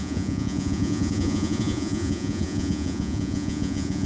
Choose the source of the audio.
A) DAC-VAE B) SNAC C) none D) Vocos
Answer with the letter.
D